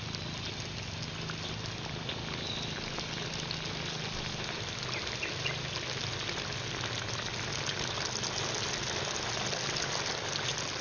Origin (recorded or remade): recorded